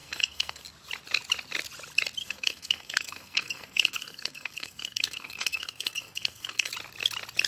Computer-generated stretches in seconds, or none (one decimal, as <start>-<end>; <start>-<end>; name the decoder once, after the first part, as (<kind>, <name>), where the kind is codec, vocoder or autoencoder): 0.0-0.6 (codec, SNAC); 2.2-6.7